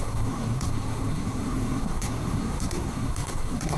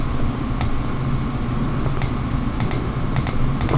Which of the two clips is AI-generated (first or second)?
first